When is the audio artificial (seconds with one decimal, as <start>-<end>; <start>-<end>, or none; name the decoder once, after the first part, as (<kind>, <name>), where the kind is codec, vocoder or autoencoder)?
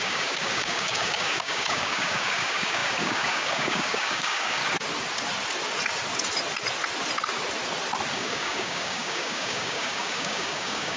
0.0-4.6 (codec, DAC); 8.1-11.0